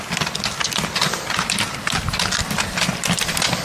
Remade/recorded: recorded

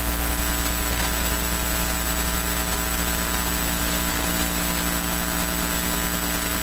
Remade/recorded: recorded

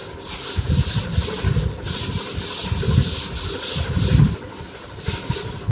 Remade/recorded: recorded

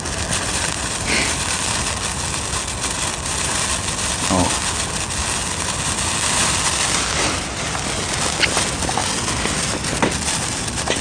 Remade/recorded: recorded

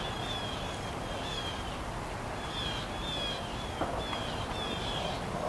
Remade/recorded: recorded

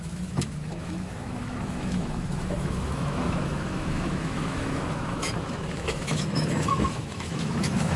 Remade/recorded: remade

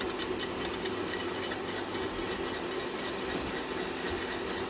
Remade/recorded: recorded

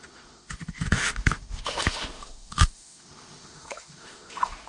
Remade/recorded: remade